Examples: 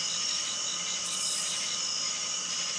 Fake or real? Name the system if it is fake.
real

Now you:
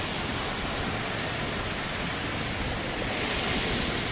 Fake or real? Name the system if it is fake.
real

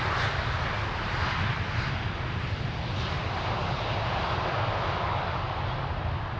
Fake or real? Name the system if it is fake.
real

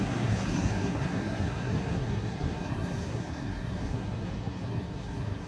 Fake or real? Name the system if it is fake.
fake, codec, SNAC